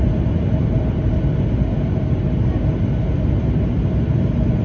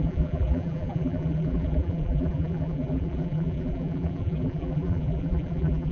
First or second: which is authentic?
first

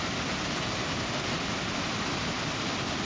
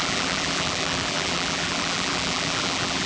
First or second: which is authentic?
first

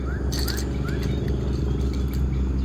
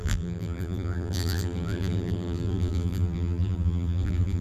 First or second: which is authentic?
first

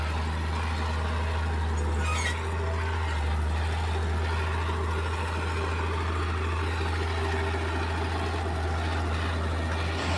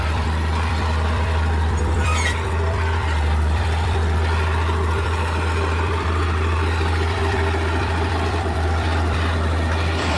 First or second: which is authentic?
first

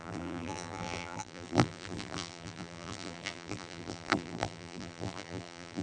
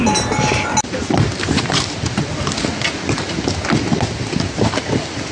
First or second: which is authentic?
second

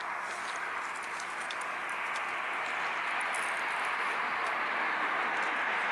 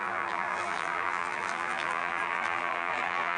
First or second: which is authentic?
first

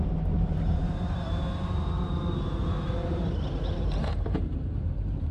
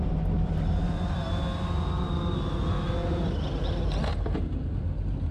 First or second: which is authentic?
second